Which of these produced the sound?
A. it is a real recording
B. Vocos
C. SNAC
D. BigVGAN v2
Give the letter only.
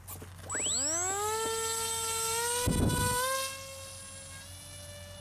A